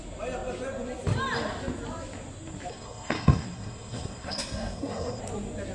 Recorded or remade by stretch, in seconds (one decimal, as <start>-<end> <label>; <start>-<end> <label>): 0.0-2.7 recorded; 2.7-5.2 remade; 5.2-5.7 recorded